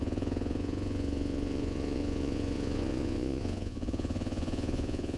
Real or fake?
fake